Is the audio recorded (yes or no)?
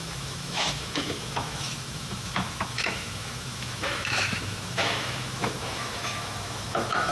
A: no